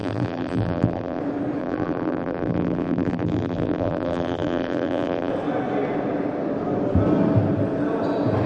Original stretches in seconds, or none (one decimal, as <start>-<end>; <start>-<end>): 1.2-1.6; 5.3-8.5